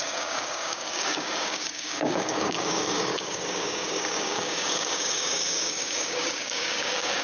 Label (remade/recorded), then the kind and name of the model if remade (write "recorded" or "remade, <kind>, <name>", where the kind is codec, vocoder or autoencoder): remade, codec, DAC